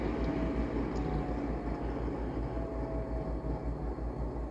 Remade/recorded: recorded